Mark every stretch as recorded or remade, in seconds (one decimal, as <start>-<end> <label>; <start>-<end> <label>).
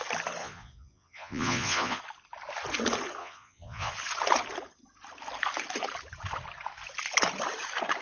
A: 0.0-0.4 recorded; 0.4-2.0 remade; 2.0-3.2 recorded; 3.2-3.9 remade; 3.9-8.0 recorded